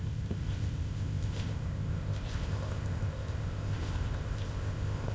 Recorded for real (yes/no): no